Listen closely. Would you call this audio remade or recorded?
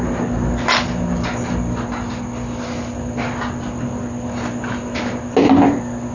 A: recorded